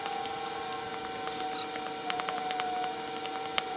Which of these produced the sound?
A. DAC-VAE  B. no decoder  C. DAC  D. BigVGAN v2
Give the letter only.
B